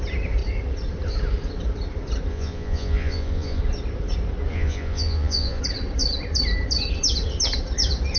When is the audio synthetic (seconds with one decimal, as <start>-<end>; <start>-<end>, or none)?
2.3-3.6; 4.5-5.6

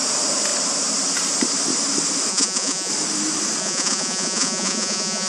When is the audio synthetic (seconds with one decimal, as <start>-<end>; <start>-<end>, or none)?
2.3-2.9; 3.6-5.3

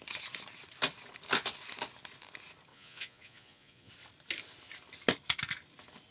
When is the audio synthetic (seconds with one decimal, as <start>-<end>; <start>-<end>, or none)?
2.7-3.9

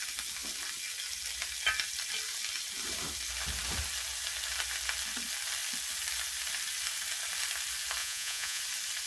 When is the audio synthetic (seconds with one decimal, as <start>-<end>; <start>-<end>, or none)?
8.0-8.6